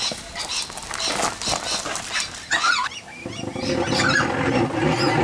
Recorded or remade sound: recorded